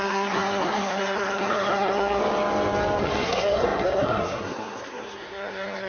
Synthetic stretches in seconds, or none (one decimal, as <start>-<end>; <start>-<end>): 0.0-2.2; 3.0-5.9